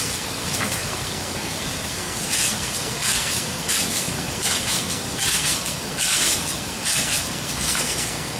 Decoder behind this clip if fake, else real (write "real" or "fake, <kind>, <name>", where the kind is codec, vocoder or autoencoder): fake, codec, SNAC